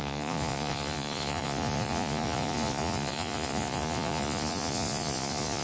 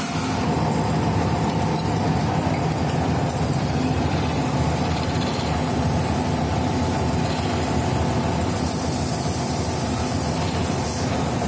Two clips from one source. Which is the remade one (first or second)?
first